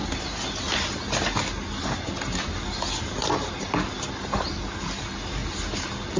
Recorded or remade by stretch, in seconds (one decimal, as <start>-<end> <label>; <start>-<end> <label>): 0.0-6.2 recorded